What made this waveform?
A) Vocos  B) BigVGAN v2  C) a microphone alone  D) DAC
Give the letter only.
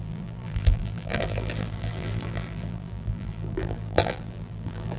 B